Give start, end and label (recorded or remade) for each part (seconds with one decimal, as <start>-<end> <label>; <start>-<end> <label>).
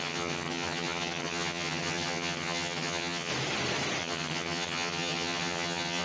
0.0-3.3 remade; 3.3-4.0 recorded; 4.0-6.0 remade